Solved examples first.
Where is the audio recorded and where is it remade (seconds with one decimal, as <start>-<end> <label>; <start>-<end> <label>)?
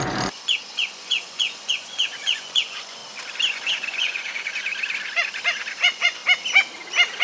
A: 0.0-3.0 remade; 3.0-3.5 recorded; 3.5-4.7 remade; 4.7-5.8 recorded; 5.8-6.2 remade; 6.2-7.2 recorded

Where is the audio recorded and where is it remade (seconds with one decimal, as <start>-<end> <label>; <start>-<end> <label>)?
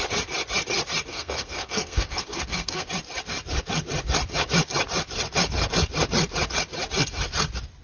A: 0.0-1.1 recorded; 1.1-2.9 remade; 2.9-7.8 recorded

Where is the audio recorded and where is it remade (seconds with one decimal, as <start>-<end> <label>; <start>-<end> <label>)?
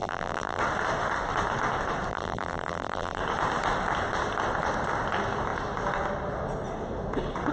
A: 0.0-0.6 remade; 0.6-2.1 recorded; 2.1-3.2 remade; 3.2-7.5 recorded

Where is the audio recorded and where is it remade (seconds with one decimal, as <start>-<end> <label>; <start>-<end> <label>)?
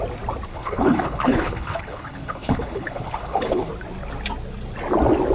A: 0.0-0.5 recorded; 0.5-3.7 remade; 3.7-5.3 recorded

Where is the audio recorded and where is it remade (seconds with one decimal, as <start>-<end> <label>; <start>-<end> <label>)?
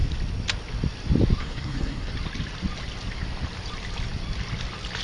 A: 0.0-1.4 recorded; 1.4-2.1 remade; 2.1-5.0 recorded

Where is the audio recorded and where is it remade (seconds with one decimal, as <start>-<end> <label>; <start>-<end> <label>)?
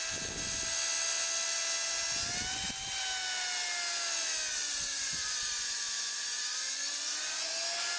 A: 0.0-2.5 recorded; 2.5-3.0 remade; 3.0-4.7 recorded; 4.7-7.5 remade; 7.5-8.0 recorded